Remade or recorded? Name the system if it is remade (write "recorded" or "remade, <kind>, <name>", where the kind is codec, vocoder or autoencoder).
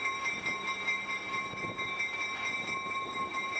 recorded